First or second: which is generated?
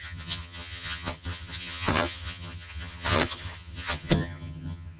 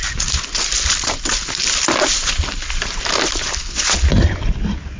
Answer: first